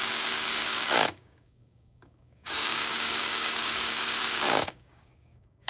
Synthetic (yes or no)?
yes